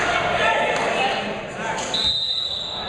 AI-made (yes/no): no